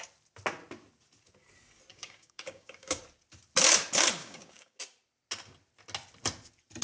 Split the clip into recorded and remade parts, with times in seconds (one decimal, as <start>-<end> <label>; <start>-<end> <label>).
0.0-1.9 recorded; 1.9-3.0 remade; 3.0-4.2 recorded; 4.2-4.8 remade; 4.8-6.8 recorded